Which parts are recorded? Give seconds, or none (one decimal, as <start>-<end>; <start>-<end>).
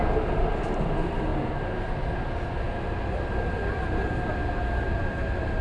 0.0-5.6